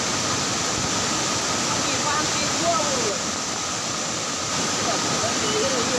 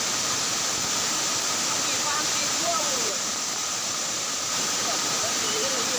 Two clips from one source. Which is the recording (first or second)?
first